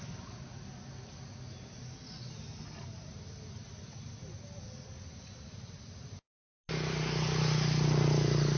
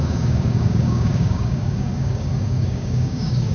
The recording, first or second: first